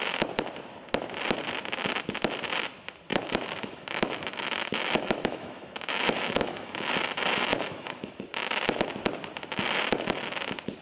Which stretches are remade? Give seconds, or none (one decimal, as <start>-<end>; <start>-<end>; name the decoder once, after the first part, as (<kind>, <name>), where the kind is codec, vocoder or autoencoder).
3.1-6.9 (autoencoder, DAC-VAE); 7.5-8.2